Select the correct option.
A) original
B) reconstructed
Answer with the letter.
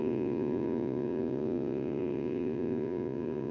B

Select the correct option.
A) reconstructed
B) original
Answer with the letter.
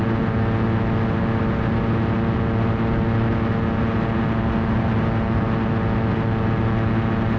B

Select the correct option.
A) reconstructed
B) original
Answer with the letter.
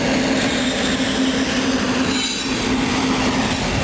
B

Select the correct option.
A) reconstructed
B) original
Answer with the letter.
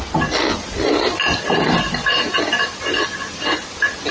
B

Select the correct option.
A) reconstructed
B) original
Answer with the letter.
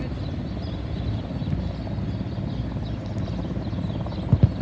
B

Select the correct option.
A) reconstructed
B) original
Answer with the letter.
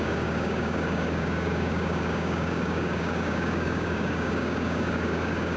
A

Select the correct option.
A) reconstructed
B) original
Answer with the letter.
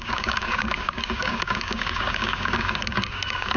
A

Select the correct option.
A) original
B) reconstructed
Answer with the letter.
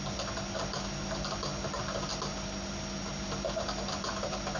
A